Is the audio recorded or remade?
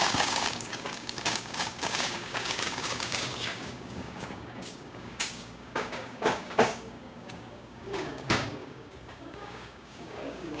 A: remade